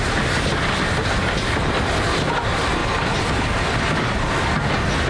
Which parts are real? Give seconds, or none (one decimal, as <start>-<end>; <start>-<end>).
0.0-5.1